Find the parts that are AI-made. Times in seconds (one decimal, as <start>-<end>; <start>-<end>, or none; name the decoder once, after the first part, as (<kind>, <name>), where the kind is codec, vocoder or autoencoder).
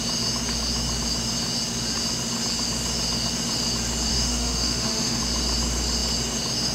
4.1-5.2 (autoencoder, DAC-VAE)